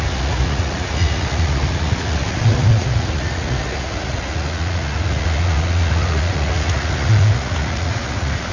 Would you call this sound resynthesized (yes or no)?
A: yes